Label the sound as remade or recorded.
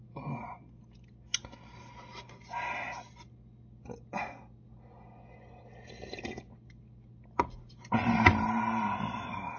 recorded